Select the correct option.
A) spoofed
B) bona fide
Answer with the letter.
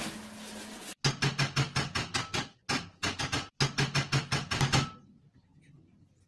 B